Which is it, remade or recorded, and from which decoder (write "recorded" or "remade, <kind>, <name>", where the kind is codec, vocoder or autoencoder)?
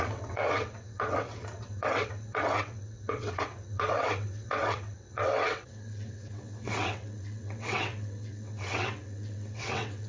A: remade, vocoder, WaveNeXt